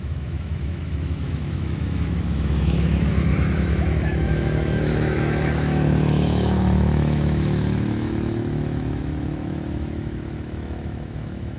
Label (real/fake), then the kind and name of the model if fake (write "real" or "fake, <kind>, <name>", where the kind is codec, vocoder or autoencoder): fake, autoencoder, DAC-VAE